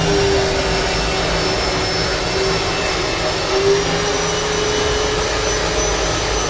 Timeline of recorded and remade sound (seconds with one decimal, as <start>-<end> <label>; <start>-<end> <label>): 0.0-6.5 recorded